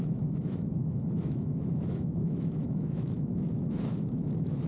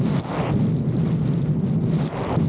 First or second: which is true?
second